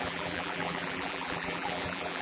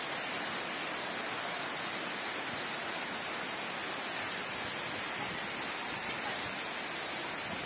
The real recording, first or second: second